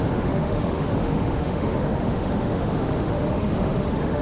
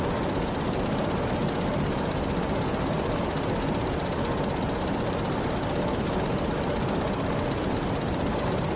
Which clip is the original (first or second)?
second